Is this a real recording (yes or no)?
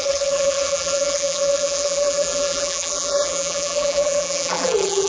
no